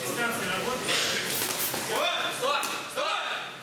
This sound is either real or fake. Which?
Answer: real